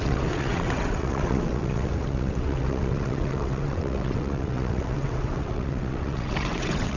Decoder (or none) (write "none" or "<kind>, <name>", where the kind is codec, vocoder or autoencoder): vocoder, WaveNeXt